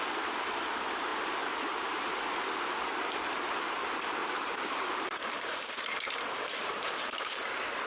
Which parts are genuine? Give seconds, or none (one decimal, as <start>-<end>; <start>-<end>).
0.0-4.2; 7.3-7.9